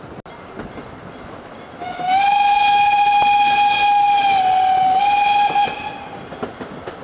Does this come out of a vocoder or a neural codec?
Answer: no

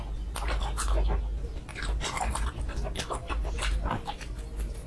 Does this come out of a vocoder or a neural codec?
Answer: no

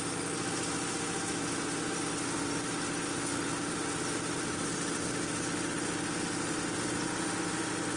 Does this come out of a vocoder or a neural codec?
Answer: no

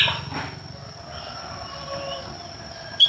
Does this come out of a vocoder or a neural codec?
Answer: no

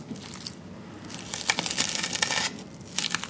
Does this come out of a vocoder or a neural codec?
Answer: no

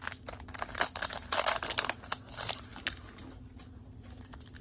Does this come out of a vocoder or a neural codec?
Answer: no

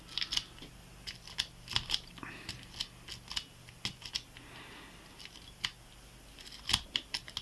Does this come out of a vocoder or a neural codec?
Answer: no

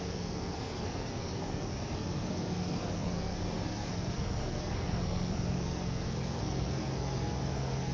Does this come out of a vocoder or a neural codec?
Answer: yes